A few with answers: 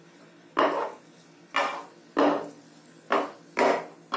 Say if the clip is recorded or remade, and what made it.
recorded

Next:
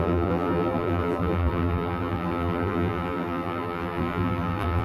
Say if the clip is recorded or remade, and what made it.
remade, vocoder, BigVGAN v2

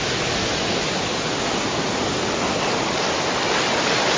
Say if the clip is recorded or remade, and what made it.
recorded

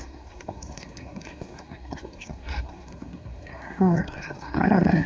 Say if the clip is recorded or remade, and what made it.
remade, codec, SNAC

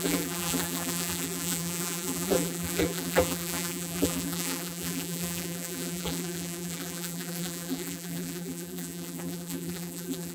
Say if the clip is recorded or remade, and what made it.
remade, vocoder, BigVGAN v2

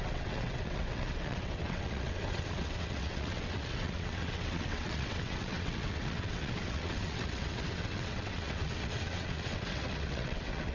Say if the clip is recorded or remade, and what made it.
remade, vocoder, WaveNeXt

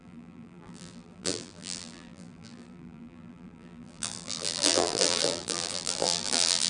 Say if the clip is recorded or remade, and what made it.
remade, vocoder, BigVGAN v2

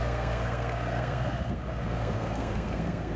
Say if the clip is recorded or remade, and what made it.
remade, codec, SNAC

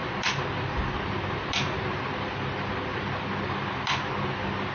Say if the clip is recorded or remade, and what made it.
recorded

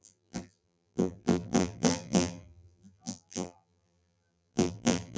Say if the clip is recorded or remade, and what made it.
remade, vocoder, BigVGAN v2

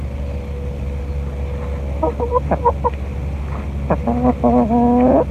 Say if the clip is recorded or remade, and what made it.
recorded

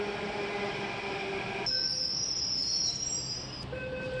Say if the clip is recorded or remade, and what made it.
recorded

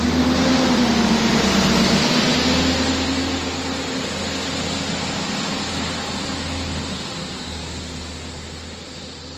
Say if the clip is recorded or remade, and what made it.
recorded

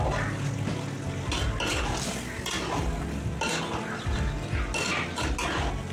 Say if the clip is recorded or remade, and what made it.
recorded